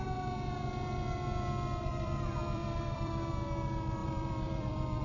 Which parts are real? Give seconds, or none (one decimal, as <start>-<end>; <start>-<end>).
0.0-1.9; 3.3-4.0